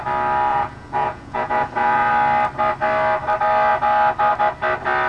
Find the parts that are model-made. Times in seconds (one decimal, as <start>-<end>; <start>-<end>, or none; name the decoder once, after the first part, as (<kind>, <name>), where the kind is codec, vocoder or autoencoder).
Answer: 0.5-2.1 (vocoder, Vocos)